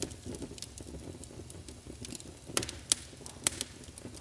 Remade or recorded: recorded